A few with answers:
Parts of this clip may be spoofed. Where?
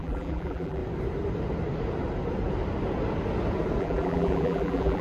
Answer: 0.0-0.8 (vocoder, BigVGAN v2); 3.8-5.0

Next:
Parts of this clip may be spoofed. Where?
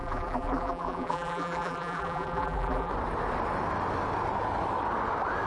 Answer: 0.0-2.9 (vocoder, BigVGAN v2)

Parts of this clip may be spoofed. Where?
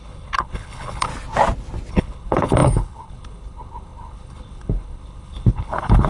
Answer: 0.0-1.1 (codec, HILCodec); 1.9-6.1